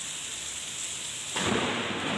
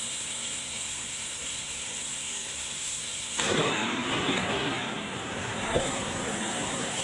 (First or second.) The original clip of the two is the first